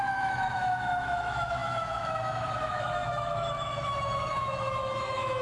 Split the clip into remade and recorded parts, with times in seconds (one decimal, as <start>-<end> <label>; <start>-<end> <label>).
0.0-5.4 remade